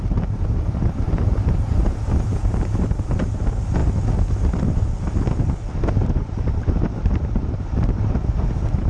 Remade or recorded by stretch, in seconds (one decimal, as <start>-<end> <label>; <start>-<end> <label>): 0.0-3.8 remade; 3.8-5.8 recorded; 5.8-8.9 remade